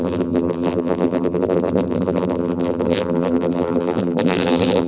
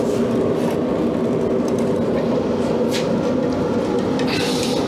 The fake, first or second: first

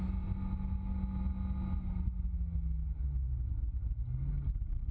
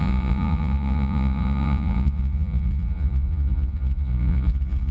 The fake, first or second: second